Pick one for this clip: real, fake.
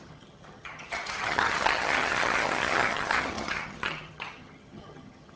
fake